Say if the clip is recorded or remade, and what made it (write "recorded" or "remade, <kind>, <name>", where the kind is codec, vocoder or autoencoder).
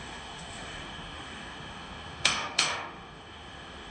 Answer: remade, autoencoder, DAC-VAE